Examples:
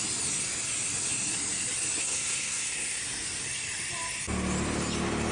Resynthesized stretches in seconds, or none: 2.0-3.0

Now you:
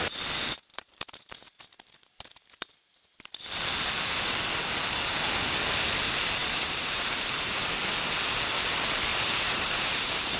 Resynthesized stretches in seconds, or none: 0.7-1.6; 6.4-7.7; 9.1-10.4

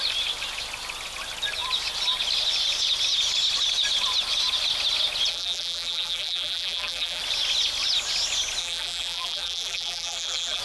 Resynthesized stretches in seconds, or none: 5.3-7.2; 8.6-10.6

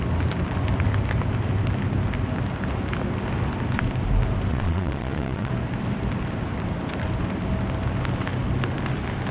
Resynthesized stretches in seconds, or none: 4.5-5.5

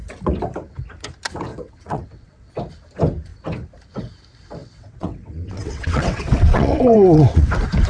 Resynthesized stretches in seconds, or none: 1.5-2.5; 4.6-7.5

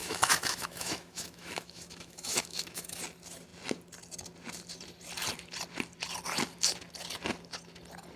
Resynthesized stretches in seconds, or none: 0.0-3.0